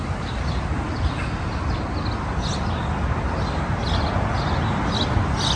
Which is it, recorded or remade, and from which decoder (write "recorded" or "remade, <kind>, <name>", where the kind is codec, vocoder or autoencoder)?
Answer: recorded